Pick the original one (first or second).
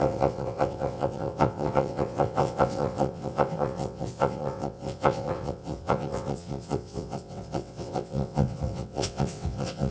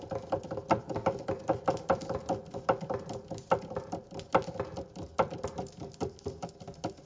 second